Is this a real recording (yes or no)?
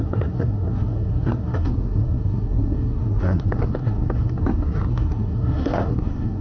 no